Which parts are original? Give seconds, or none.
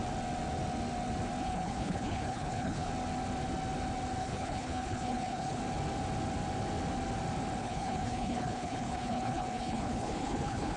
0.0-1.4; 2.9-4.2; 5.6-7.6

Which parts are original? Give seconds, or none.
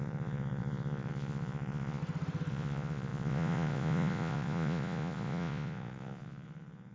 2.0-2.5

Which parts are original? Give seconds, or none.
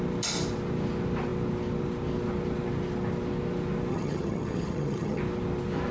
0.0-3.9; 5.2-5.9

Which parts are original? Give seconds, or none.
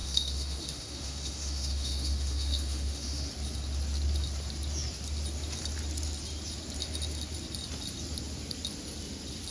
3.3-9.5